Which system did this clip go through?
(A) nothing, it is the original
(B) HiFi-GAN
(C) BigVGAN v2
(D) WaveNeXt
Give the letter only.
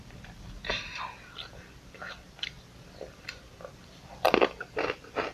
A